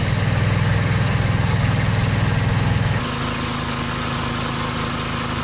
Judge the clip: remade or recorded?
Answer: recorded